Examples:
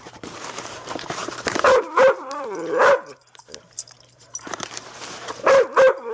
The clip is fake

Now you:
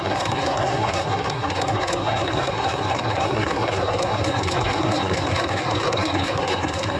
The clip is fake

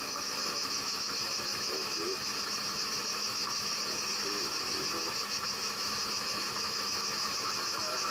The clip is fake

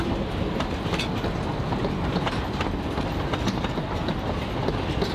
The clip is real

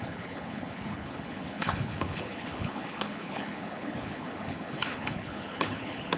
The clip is fake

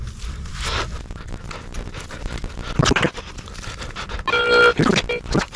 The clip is real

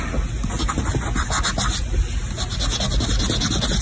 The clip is real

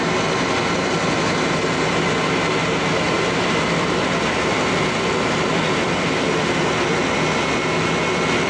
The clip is real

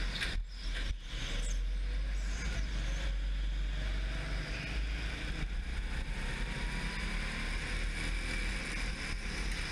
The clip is real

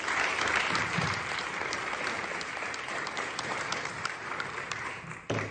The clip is fake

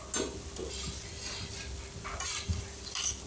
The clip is real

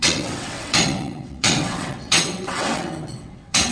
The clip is fake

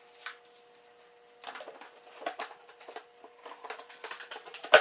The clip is real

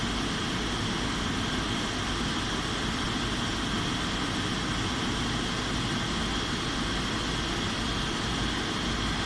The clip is real